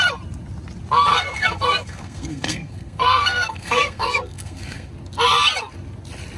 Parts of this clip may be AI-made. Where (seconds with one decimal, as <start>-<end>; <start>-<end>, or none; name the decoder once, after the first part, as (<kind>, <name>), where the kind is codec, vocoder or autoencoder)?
1.1-4.9 (codec, SNAC)